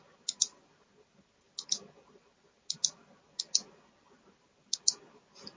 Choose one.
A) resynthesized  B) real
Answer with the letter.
B